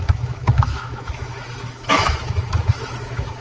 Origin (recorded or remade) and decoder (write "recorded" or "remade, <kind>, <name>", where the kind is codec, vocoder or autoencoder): remade, autoencoder, DAC-VAE